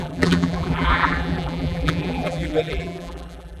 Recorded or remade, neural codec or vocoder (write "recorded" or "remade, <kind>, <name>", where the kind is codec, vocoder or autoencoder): remade, vocoder, BigVGAN v2